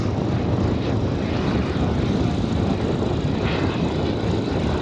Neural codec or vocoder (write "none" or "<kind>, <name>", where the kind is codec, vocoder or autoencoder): none